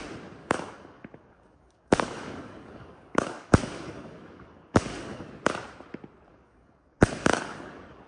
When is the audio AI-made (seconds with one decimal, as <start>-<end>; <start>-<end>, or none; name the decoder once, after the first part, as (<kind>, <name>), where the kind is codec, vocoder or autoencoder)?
0.4-5.3 (codec, DAC); 6.3-8.1